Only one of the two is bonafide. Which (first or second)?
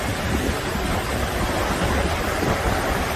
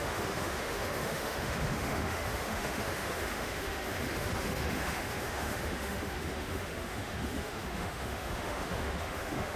first